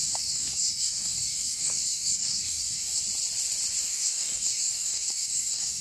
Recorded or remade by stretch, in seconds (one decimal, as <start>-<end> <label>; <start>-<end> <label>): 0.0-3.0 remade; 3.0-3.8 recorded; 3.8-5.8 remade